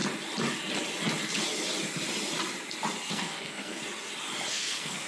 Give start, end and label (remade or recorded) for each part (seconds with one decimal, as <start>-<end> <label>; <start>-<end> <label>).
0.0-3.1 recorded; 3.1-3.8 remade; 3.8-4.5 recorded; 4.5-5.1 remade